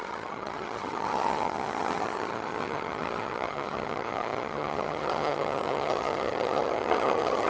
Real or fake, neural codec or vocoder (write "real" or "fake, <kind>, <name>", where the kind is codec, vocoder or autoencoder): fake, vocoder, HiFi-GAN